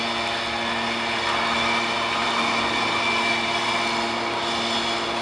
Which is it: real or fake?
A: real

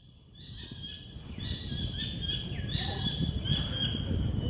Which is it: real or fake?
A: real